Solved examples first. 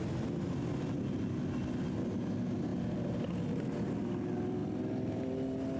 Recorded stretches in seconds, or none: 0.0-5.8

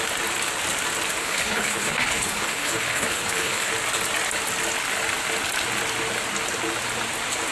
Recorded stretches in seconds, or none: 0.0-1.2; 3.7-7.5

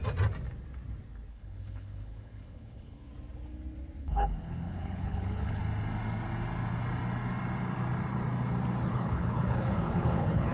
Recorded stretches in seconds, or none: 0.0-1.3; 3.1-4.0; 5.6-8.9

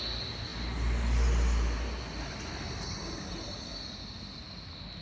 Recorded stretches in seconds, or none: 0.0-5.0

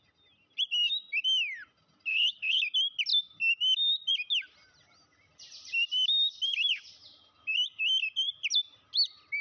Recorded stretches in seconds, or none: 0.0-2.1; 2.6-9.4

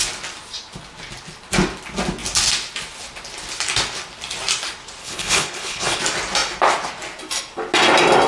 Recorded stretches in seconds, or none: 0.0-5.0; 6.0-8.3

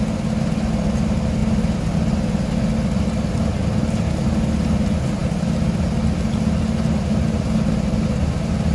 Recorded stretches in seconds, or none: 0.0-8.7

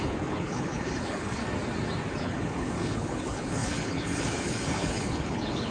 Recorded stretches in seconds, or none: 1.4-2.2